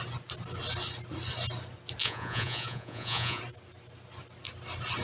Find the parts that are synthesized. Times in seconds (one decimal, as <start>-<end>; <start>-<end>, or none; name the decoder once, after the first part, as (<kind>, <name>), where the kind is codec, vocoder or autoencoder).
2.0-3.4 (vocoder, Vocos)